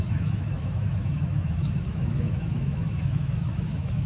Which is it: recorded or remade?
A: remade